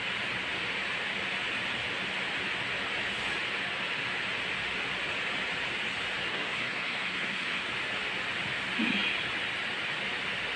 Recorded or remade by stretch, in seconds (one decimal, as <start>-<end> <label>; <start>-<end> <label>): 0.0-6.2 recorded; 6.2-7.7 remade; 7.7-10.6 recorded